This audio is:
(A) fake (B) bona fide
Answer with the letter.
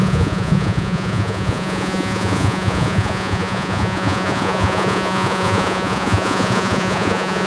A